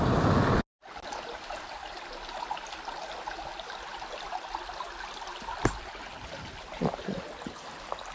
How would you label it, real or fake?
real